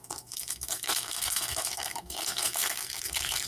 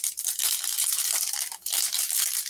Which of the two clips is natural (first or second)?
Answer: second